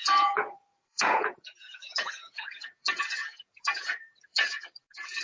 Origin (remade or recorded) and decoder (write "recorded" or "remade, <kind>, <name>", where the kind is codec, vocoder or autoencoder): remade, vocoder, Vocos